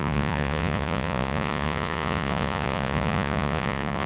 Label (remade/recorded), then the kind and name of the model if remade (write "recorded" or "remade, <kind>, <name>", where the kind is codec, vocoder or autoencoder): remade, vocoder, Vocos